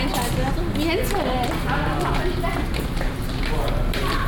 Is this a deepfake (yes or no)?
no